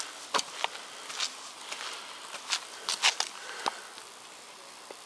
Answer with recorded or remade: recorded